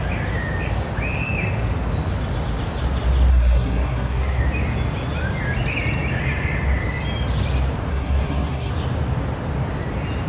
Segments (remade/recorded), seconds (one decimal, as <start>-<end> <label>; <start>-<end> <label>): 0.0-3.3 recorded; 3.3-4.4 remade; 4.4-7.9 recorded; 7.9-8.7 remade; 8.7-10.3 recorded

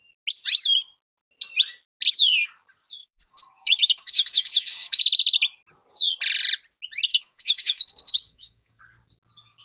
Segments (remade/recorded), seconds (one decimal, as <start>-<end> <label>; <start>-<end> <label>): 0.0-3.0 recorded; 3.0-5.0 remade; 5.0-7.1 recorded; 7.1-8.8 remade; 8.8-9.6 recorded

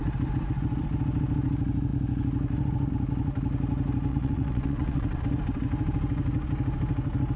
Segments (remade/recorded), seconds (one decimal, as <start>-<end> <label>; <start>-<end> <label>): 0.0-4.1 recorded; 4.1-5.2 remade; 5.2-7.4 recorded